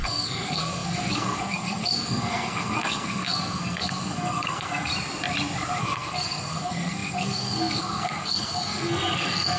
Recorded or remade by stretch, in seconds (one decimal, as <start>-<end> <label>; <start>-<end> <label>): 0.0-4.9 remade; 4.9-5.8 recorded; 5.8-9.6 remade